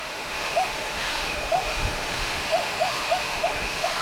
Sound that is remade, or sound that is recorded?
remade